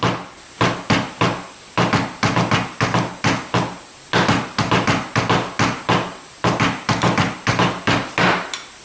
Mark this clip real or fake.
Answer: real